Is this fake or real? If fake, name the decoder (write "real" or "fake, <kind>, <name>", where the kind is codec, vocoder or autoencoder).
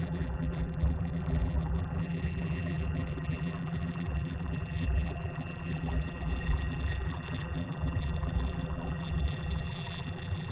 fake, vocoder, BigVGAN v2